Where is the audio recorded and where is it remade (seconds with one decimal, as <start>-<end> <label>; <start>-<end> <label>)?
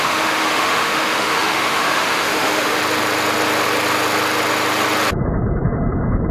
0.0-2.8 remade; 2.8-6.3 recorded